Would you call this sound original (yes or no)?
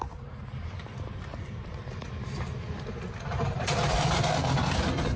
no